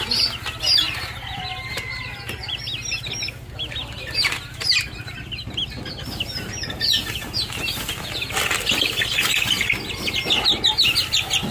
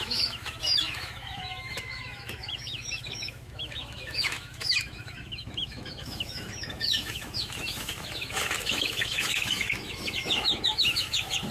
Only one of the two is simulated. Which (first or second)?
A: second